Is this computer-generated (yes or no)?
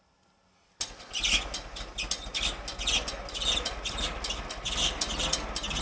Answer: no